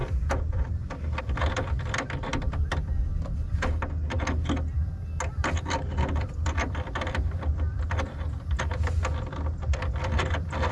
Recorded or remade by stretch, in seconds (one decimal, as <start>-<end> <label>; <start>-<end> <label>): 0.0-1.2 recorded; 1.2-2.3 remade; 2.3-5.3 recorded; 5.3-10.7 remade

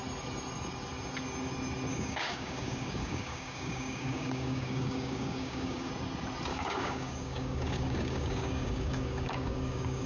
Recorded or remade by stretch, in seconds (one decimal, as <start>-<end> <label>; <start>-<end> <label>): 0.0-1.9 recorded; 1.9-5.9 remade; 5.9-6.5 recorded; 6.5-10.1 remade

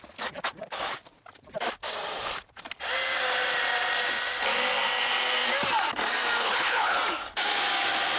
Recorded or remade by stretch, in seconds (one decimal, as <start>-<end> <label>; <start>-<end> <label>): 0.0-6.4 recorded; 6.4-7.0 remade; 7.0-8.2 recorded

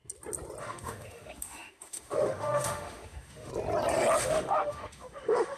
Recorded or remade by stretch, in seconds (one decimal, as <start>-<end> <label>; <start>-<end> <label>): 0.0-0.6 recorded; 0.6-3.5 remade; 3.5-4.2 recorded; 4.2-5.6 remade

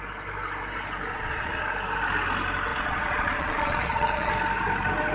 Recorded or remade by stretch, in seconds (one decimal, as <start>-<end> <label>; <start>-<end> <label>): 0.0-1.1 recorded; 1.1-1.6 remade; 1.6-2.7 recorded; 2.7-4.3 remade; 4.3-5.1 recorded

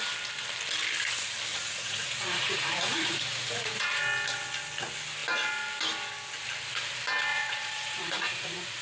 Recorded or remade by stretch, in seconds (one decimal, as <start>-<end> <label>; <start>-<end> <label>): 0.0-1.5 recorded; 1.5-4.0 remade; 4.0-7.3 recorded; 7.3-8.8 remade

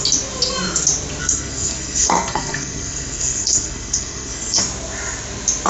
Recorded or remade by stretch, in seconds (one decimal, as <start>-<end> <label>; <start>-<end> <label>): 0.0-1.2 recorded; 1.2-4.6 remade; 4.6-5.7 recorded